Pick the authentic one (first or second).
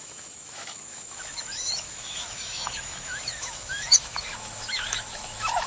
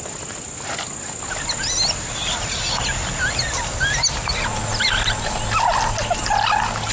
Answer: second